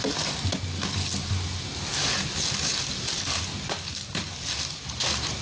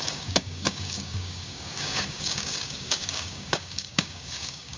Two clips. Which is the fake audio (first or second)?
second